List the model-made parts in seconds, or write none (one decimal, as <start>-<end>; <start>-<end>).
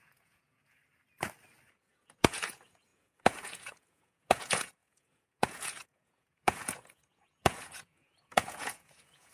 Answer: 0.0-0.8; 1.7-9.3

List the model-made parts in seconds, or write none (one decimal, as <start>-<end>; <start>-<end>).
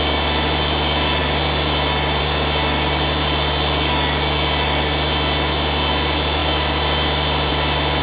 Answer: none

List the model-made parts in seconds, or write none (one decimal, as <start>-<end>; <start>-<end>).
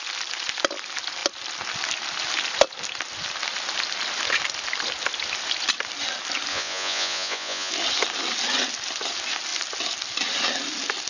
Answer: 6.5-7.7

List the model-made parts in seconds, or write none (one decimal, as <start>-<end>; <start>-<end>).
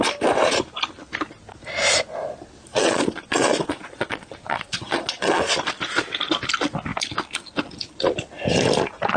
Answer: 2.7-5.4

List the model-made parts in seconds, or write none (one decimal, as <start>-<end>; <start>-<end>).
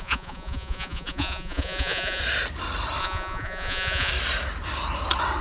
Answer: 0.0-2.2; 3.0-4.1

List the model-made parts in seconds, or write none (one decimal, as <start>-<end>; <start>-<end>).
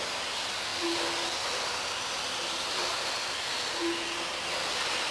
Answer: none